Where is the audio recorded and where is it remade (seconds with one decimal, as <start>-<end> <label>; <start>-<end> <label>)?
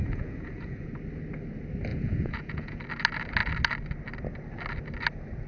0.0-0.9 remade; 0.9-1.9 recorded; 1.9-2.8 remade; 2.8-5.5 recorded